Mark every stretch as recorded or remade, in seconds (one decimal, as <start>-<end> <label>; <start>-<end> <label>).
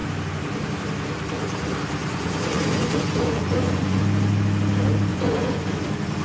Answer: 0.0-2.0 recorded; 2.0-4.0 remade; 4.0-5.1 recorded; 5.1-5.7 remade; 5.7-6.2 recorded